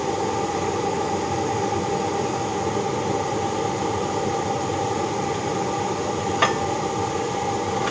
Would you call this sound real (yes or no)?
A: yes